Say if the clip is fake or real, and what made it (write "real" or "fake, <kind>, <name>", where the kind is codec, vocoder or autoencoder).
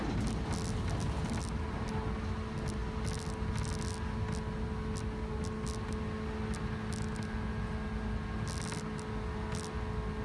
real